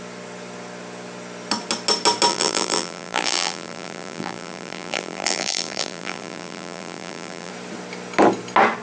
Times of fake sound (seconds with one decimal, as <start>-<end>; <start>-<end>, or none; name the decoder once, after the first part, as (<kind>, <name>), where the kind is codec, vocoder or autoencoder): 2.3-7.5 (vocoder, BigVGAN v2)